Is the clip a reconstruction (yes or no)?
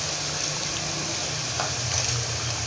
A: no